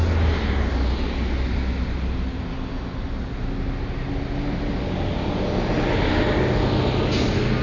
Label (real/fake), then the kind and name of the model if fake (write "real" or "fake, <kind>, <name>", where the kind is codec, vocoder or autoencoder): real